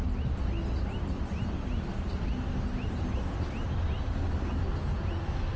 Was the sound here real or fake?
real